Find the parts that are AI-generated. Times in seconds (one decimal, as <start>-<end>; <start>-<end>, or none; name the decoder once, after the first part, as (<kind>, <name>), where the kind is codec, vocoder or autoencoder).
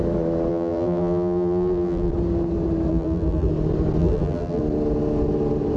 0.5-2.1 (vocoder, BigVGAN v2); 2.9-3.5; 4.0-4.6